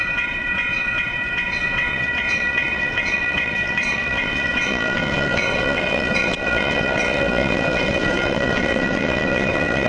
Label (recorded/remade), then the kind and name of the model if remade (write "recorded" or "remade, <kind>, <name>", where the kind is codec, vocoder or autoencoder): remade, vocoder, WaveNeXt